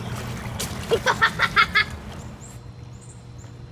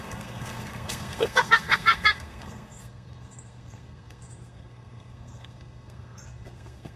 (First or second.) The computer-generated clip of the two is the second